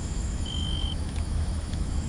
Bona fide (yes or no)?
no